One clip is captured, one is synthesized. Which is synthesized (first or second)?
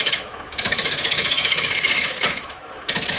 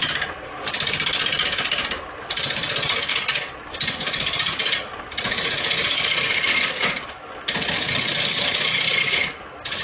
first